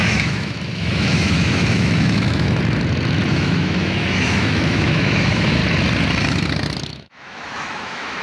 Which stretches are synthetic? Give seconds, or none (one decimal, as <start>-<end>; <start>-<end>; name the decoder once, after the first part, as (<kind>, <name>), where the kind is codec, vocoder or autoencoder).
0.0-2.6 (autoencoder, DAC-VAE); 3.3-5.6; 6.9-8.2